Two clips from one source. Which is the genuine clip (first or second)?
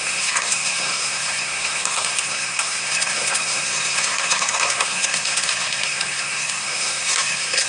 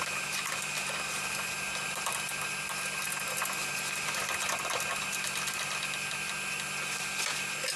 second